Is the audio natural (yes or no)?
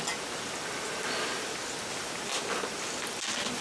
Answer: yes